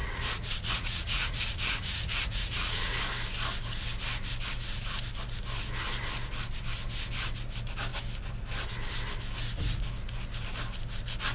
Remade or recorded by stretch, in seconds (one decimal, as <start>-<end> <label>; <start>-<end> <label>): 0.0-3.0 remade; 3.0-11.3 recorded